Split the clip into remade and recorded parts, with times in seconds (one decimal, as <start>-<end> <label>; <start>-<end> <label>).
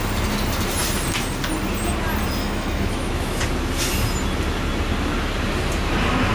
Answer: 0.0-2.4 recorded; 2.4-3.4 remade; 3.4-6.3 recorded